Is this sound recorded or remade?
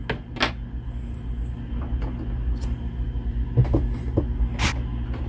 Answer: recorded